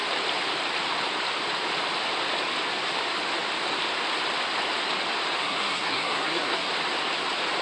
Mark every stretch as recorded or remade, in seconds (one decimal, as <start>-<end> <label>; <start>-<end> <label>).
0.0-5.4 recorded; 5.4-6.7 remade; 6.7-7.6 recorded